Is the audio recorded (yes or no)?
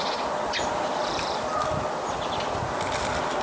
yes